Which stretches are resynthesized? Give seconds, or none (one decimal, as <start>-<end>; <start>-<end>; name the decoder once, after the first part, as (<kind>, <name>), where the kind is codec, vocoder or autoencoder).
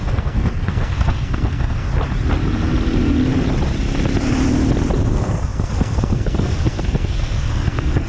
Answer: 0.0-1.9 (codec, SNAC); 5.1-8.1